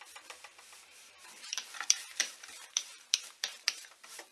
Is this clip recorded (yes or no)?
no